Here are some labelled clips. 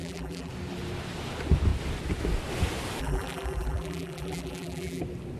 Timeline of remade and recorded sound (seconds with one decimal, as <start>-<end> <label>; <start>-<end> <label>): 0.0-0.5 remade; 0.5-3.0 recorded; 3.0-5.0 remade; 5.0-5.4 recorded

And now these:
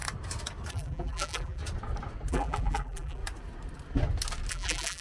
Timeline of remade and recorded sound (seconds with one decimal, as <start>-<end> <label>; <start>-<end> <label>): 0.0-0.7 recorded; 0.7-1.6 remade; 1.6-2.3 recorded; 2.3-3.2 remade; 3.2-4.5 recorded; 4.5-5.0 remade

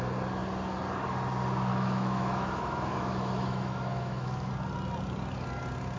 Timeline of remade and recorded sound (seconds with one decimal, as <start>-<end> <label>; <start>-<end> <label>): 0.0-1.7 recorded; 1.7-4.5 remade; 4.5-6.0 recorded

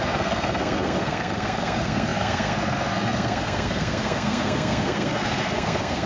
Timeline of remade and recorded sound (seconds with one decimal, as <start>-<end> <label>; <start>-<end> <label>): 0.0-6.1 remade